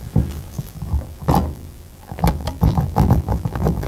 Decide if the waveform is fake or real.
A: fake